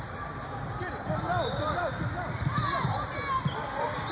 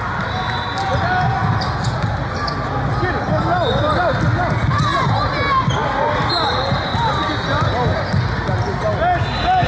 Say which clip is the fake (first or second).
first